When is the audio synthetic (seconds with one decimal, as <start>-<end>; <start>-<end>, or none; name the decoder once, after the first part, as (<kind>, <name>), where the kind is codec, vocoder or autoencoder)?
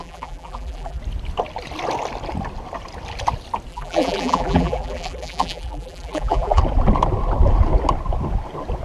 0.0-1.0 (vocoder, BigVGAN v2); 3.7-6.6